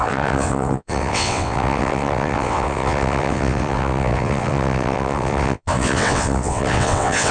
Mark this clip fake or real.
fake